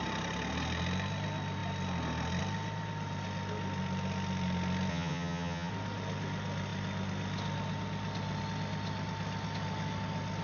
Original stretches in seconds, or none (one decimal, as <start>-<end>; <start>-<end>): 0.0-4.9; 5.7-10.4